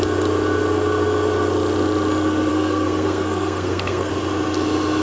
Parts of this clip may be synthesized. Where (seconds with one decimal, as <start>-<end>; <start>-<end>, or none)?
2.5-4.1